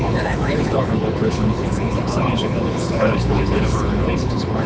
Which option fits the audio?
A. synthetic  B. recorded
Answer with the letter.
A